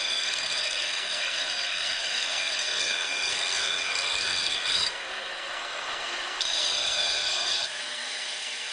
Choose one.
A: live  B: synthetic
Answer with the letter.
B